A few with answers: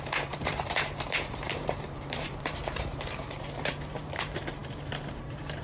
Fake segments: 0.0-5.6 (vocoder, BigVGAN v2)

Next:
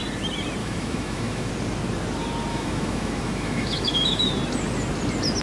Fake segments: 0.6-1.5 (autoencoder, DAC-VAE); 2.5-4.3

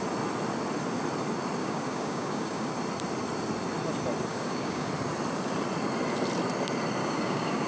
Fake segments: 1.6-2.7 (codec, DAC); 4.3-4.9; 7.0-7.7

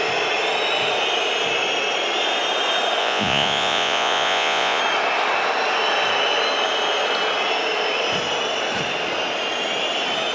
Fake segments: 3.0-4.8 (vocoder, Vocos)

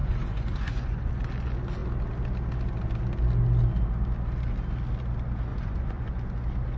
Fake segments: 0.0-1.1 (vocoder, Vocos); 5.5-6.1